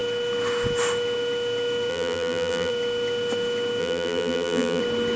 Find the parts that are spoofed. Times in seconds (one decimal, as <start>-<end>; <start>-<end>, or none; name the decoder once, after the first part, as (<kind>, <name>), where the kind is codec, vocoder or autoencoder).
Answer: 1.9-2.7 (vocoder, BigVGAN v2); 3.8-4.8